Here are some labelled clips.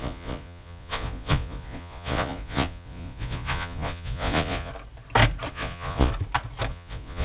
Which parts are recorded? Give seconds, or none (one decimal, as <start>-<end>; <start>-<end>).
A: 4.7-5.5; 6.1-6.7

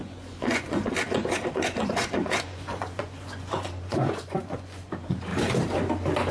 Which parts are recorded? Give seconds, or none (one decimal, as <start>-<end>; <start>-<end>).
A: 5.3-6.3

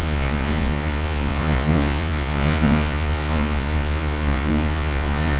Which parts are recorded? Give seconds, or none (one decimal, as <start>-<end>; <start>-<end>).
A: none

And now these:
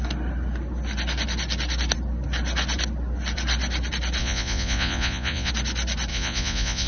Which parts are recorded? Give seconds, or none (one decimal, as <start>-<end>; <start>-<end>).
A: 0.0-4.2; 5.5-6.1

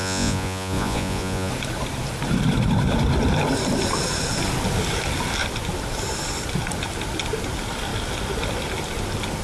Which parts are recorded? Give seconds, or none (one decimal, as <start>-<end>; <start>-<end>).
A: 1.5-9.4

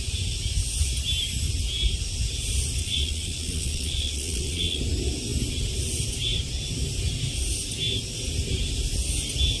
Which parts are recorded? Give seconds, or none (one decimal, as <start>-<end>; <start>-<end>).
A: 0.0-2.8; 4.8-9.6

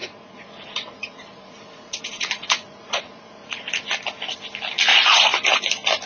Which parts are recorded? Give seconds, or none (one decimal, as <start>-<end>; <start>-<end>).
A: 3.7-4.9; 5.6-6.1

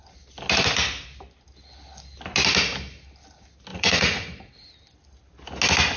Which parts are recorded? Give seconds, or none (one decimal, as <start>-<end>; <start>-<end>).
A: 0.0-3.7; 4.5-6.0